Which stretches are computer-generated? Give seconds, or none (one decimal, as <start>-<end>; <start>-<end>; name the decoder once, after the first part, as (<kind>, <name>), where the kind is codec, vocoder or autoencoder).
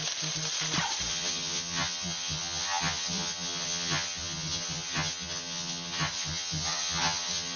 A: 1.1-7.6 (vocoder, HiFi-GAN)